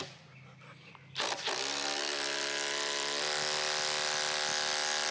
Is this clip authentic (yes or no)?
yes